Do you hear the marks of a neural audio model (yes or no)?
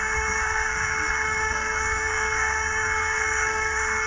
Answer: yes